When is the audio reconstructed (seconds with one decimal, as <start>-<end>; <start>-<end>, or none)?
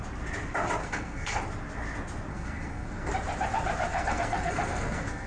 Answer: 0.8-1.4; 2.3-3.1; 3.9-5.3